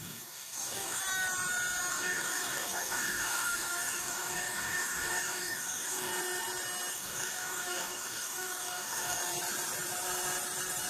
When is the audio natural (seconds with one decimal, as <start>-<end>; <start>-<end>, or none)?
1.0-1.9; 6.1-6.9; 9.2-10.9